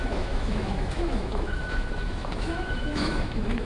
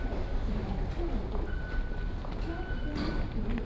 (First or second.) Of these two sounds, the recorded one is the second